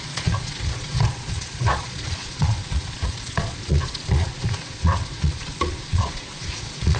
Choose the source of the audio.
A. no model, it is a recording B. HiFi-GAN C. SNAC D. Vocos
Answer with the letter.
D